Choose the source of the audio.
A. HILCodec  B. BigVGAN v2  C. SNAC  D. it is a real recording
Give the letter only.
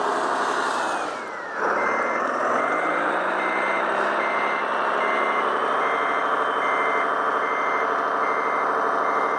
D